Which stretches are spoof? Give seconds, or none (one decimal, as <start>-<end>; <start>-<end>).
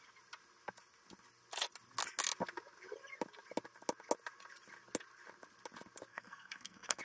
6.1-7.0